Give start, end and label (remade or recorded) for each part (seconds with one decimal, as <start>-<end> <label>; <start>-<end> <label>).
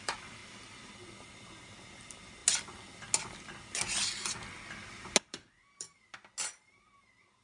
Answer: 0.0-7.4 recorded